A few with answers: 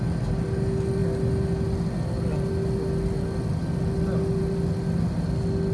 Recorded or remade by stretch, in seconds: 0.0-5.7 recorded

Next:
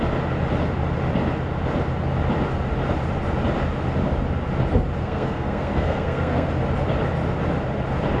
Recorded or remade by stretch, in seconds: 0.0-5.0 recorded; 5.0-6.5 remade; 6.5-8.2 recorded

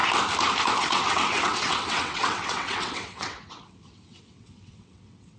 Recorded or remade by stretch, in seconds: 0.0-0.8 recorded; 0.8-5.4 remade